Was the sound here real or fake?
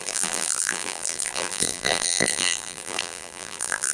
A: fake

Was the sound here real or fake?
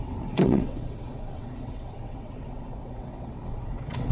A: fake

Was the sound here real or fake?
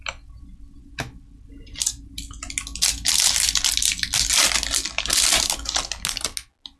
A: real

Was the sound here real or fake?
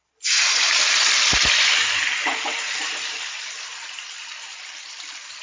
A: real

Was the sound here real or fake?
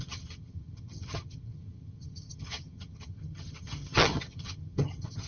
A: fake